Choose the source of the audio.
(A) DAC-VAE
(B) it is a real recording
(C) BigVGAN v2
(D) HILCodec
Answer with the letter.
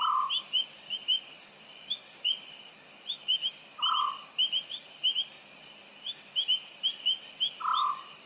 B